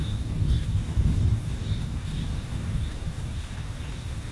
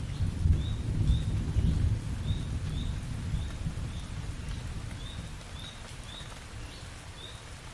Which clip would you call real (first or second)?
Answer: second